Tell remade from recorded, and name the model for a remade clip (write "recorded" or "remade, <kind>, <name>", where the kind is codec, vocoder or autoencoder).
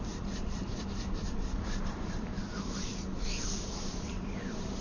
remade, vocoder, BigVGAN v2